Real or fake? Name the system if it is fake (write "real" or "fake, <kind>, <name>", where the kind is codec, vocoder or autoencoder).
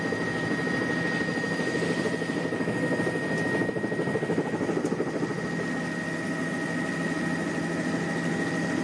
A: real